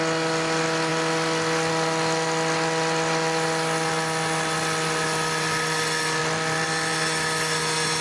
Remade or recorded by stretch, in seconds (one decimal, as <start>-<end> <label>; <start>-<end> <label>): 0.0-0.9 recorded; 0.9-1.7 remade; 1.7-6.2 recorded; 6.2-6.9 remade; 6.9-8.0 recorded